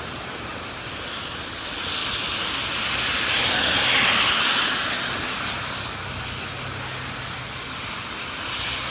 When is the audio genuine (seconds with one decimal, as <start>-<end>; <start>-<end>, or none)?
0.0-8.9